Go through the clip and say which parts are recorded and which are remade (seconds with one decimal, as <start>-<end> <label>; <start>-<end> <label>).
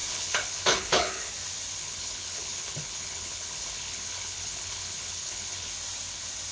0.0-1.3 remade; 1.3-1.8 recorded; 1.8-5.7 remade; 5.7-6.5 recorded